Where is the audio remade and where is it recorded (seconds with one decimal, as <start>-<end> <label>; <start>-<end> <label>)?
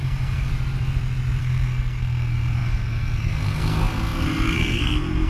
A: 0.0-0.5 remade; 0.5-1.4 recorded; 1.4-5.3 remade